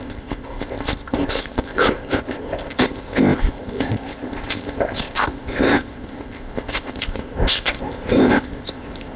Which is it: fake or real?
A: fake